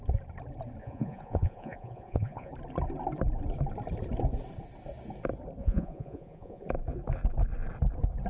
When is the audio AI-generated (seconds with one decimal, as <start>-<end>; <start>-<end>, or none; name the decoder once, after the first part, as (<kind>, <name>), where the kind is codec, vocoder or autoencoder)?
0.8-2.5 (vocoder, Vocos); 5.6-6.7